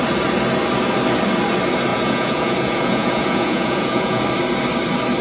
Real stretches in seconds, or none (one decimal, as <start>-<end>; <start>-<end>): 0.0-1.9; 4.2-5.2